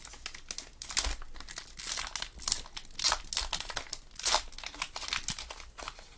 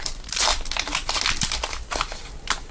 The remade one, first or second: second